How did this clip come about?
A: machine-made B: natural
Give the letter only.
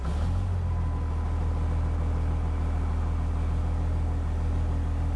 B